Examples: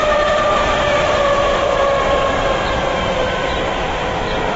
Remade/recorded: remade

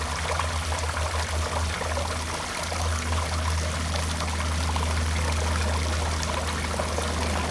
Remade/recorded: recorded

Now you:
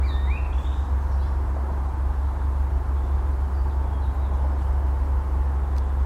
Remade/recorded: recorded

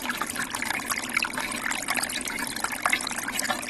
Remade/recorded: recorded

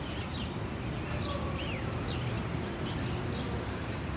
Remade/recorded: recorded